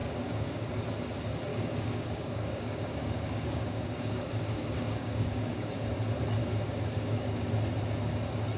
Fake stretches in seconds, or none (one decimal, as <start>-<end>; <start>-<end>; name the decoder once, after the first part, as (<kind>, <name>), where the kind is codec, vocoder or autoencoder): 0.0-0.8 (codec, DAC); 1.5-5.9; 6.4-7.5